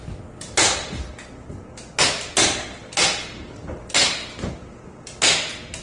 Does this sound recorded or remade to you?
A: recorded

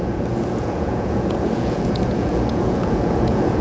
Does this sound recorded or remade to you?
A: remade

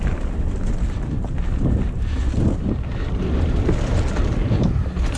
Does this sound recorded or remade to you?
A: recorded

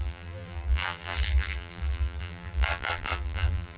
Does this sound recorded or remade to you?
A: remade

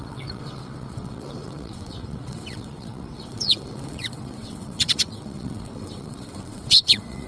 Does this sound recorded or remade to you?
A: remade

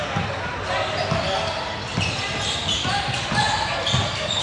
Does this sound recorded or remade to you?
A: recorded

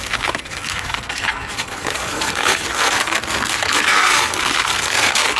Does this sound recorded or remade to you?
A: remade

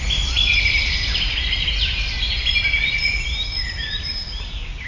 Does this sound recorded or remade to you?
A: recorded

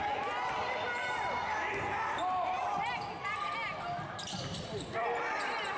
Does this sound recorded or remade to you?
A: recorded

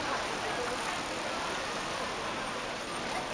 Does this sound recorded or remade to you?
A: remade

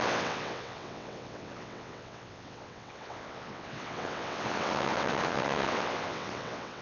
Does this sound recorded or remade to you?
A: remade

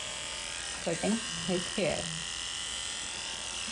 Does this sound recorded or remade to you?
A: remade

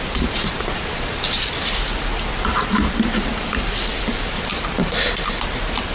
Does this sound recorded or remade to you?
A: remade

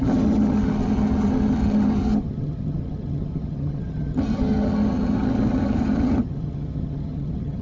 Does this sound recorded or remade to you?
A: remade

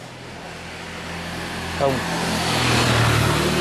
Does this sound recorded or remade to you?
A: recorded